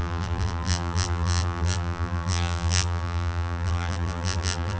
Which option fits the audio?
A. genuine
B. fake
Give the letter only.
B